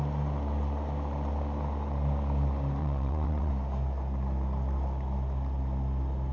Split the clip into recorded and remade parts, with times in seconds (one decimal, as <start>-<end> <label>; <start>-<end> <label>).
0.0-2.8 recorded; 2.8-3.5 remade; 3.5-6.3 recorded